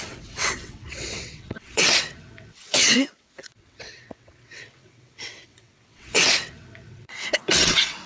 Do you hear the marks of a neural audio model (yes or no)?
yes